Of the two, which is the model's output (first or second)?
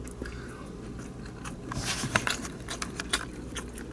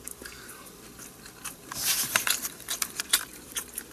second